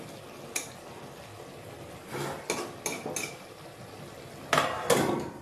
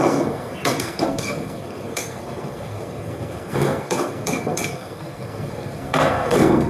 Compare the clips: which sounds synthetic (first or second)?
second